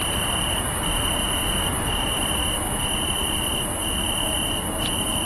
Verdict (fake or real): real